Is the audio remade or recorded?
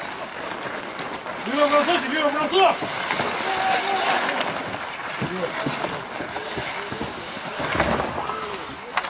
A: recorded